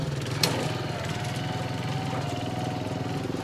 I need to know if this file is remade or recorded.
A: recorded